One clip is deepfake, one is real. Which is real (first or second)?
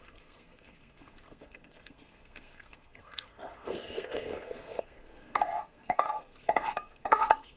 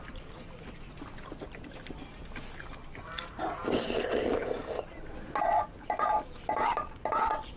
second